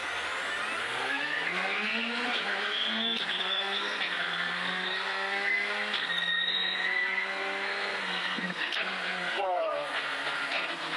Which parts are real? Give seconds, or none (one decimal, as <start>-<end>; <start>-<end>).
0.0-0.8